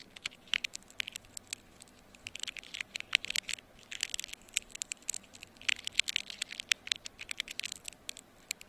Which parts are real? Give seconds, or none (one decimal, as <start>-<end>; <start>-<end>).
0.0-0.8